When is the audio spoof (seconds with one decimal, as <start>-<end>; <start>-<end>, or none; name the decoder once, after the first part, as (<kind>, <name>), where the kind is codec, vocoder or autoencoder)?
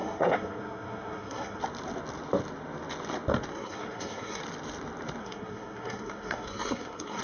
0.0-1.6 (codec, SNAC); 3.5-4.4; 5.2-7.2